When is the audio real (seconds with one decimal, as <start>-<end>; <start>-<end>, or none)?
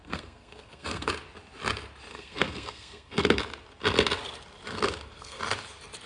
1.1-2.1; 3.4-4.7; 5.4-6.1